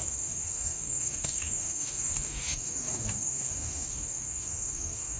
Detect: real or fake fake